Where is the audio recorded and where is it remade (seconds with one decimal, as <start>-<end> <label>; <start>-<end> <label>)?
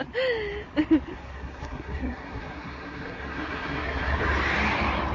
0.0-1.1 recorded; 1.1-4.2 remade; 4.2-5.1 recorded